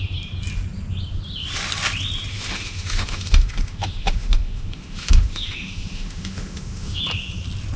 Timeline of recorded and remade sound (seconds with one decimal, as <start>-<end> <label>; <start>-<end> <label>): 0.0-2.3 recorded; 2.3-7.0 remade; 7.0-7.8 recorded